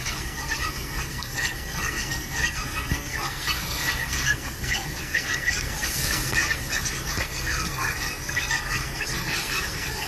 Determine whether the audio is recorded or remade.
remade